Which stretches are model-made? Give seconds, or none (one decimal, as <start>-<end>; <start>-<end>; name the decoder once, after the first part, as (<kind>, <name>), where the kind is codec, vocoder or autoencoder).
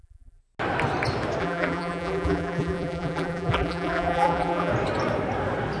0.0-0.4 (vocoder, BigVGAN v2); 1.4-4.7